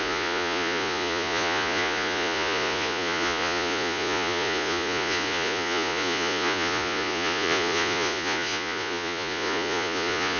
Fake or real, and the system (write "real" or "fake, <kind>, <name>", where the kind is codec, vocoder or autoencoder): fake, vocoder, Vocos